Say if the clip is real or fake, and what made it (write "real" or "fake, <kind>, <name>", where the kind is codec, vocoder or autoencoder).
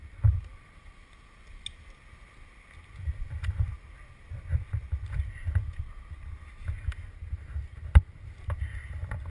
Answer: real